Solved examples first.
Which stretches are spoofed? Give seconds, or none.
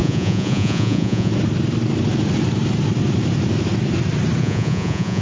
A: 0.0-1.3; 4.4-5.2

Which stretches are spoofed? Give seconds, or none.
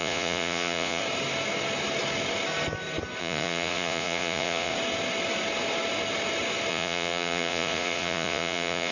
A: 0.0-1.0; 3.2-4.7; 6.7-8.9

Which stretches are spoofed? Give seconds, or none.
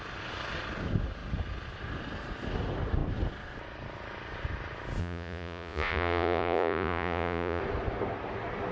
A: 5.0-7.6